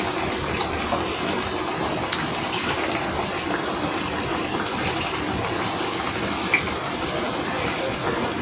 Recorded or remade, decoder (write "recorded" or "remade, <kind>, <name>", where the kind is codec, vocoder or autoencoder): recorded